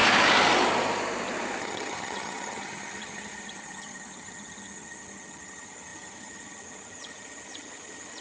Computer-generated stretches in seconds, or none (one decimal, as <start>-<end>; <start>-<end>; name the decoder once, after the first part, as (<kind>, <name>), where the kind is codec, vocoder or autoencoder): 1.6-8.2 (vocoder, HiFi-GAN)